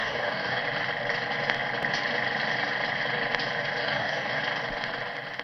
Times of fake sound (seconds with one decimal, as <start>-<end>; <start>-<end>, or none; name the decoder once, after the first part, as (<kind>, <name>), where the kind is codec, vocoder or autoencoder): 0.0-0.6 (codec, DAC); 3.8-4.4